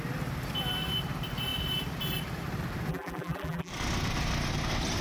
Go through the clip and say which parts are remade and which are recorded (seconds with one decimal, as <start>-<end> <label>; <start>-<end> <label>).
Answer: 0.0-2.9 recorded; 2.9-3.7 remade; 3.7-5.0 recorded